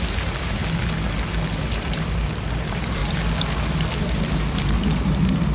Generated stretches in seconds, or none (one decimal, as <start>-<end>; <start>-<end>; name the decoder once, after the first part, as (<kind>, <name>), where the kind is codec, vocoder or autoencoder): 0.0-0.6 (vocoder, BigVGAN v2); 1.5-3.0; 4.2-5.5